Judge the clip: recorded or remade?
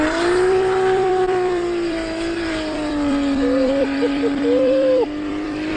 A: remade